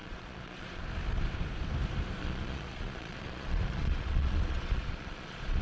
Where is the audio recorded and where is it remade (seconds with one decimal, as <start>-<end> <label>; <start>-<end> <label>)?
0.0-0.8 remade; 0.8-2.2 recorded; 2.2-5.6 remade